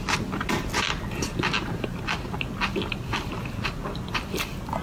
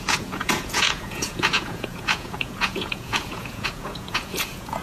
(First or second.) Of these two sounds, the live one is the first